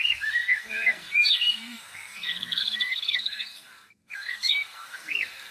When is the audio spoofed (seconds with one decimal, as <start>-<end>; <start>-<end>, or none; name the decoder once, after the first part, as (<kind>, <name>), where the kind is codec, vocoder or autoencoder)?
0.0-5.5 (codec, SNAC)